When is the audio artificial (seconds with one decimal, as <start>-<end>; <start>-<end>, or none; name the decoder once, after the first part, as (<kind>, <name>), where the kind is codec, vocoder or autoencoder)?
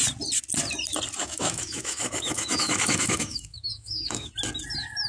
1.2-4.3 (autoencoder, DAC-VAE)